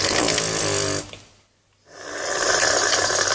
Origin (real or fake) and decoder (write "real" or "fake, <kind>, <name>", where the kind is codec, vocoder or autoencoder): real